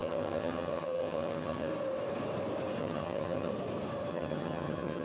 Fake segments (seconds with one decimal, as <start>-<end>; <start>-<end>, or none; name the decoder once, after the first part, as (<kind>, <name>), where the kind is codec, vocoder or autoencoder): 0.0-1.7 (vocoder, HiFi-GAN); 2.8-3.5; 4.1-5.0